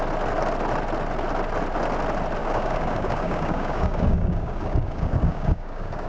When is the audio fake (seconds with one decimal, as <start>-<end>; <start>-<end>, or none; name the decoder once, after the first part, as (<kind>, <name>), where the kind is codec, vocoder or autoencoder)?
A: 2.4-6.1 (codec, DAC)

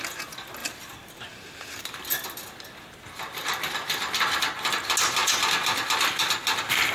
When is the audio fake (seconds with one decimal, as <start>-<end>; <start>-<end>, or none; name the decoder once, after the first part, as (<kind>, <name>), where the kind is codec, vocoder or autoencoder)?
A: 0.6-1.3 (vocoder, BigVGAN v2); 5.2-6.3

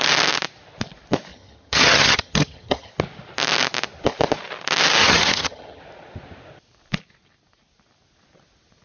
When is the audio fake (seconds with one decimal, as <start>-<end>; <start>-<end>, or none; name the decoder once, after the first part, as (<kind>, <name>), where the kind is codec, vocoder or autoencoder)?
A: 1.3-2.9 (vocoder, HiFi-GAN); 5.0-5.8

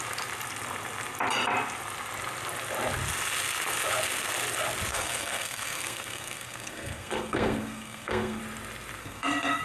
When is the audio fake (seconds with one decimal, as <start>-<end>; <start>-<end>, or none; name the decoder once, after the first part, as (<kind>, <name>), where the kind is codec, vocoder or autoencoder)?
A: 4.9-8.4 (codec, SNAC); 9.0-9.6